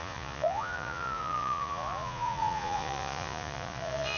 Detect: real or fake fake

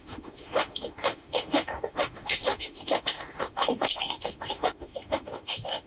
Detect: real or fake fake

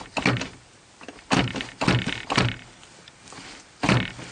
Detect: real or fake real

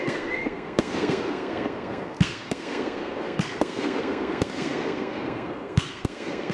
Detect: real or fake fake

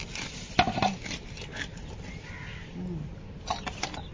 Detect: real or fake real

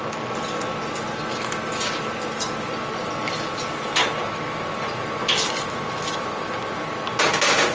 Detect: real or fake real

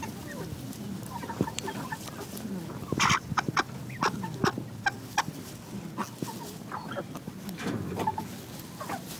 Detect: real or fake real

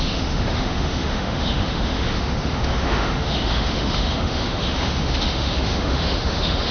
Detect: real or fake fake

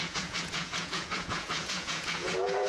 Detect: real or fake fake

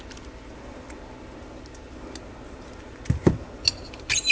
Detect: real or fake real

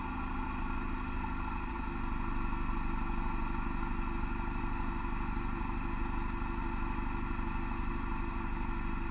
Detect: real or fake real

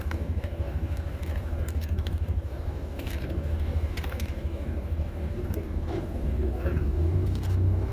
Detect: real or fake fake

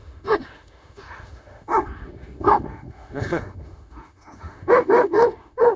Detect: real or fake fake